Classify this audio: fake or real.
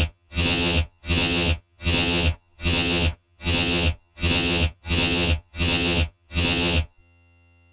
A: fake